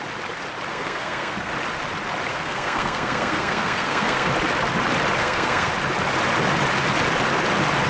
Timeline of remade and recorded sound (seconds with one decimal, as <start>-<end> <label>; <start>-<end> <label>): 0.0-0.7 recorded; 0.7-1.5 remade; 1.5-2.3 recorded; 2.3-4.3 remade; 4.3-5.2 recorded; 5.2-5.7 remade; 5.7-7.9 recorded